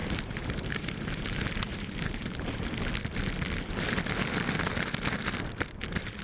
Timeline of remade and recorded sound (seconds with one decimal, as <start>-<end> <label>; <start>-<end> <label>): 0.0-2.6 remade; 2.6-6.2 recorded